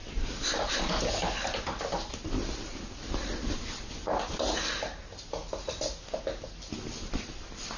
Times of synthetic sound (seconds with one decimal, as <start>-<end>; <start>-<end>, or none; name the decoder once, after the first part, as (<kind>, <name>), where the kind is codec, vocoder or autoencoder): 0.0-3.9 (vocoder, BigVGAN v2)